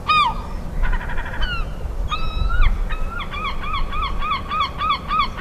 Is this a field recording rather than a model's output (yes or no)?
yes